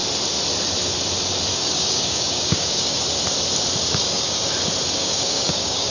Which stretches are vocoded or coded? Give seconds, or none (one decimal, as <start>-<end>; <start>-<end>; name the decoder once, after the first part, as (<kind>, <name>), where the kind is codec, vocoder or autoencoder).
1.5-3.0 (codec, DAC); 3.9-4.5; 5.0-5.9